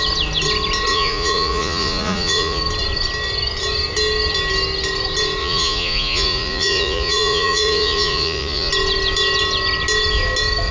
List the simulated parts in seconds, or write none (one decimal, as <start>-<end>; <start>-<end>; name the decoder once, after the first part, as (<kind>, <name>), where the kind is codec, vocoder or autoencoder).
0.9-2.6 (vocoder, Vocos); 5.4-8.7